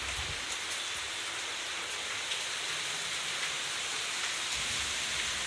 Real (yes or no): yes